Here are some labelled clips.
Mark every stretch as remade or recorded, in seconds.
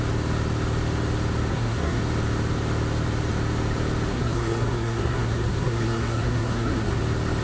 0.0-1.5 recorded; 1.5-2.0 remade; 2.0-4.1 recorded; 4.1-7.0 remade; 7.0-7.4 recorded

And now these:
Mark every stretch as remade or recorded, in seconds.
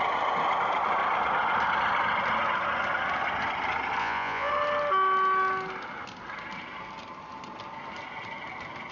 0.0-4.0 recorded; 4.0-4.5 remade; 4.5-8.9 recorded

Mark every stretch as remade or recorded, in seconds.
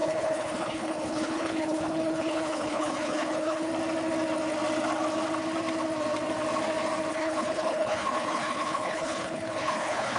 0.0-3.7 remade; 3.7-7.1 recorded; 7.1-10.2 remade